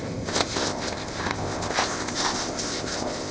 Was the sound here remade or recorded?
remade